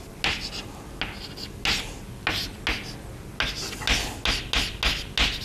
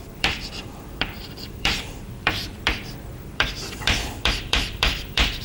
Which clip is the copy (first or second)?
second